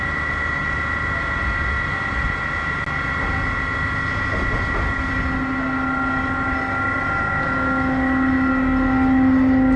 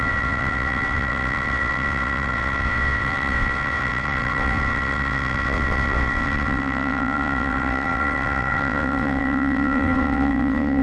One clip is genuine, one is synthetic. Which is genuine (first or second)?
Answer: first